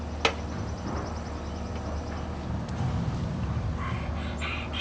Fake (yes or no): no